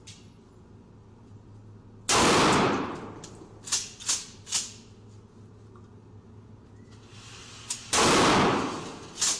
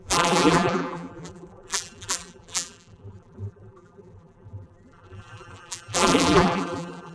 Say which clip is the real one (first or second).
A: first